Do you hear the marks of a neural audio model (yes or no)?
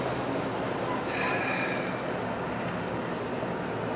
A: no